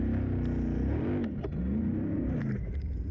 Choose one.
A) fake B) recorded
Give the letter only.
B